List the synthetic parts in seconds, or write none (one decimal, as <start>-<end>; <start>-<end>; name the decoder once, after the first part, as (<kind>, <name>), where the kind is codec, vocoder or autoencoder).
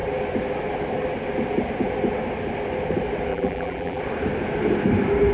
3.3-4.0 (vocoder, BigVGAN v2)